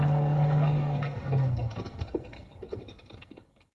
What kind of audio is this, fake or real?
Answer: fake